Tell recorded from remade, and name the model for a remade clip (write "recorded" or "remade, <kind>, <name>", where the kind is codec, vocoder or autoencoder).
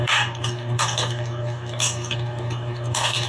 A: remade, codec, DAC